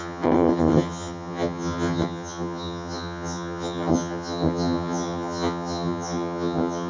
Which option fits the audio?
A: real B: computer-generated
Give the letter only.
B